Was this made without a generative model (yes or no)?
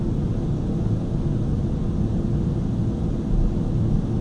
yes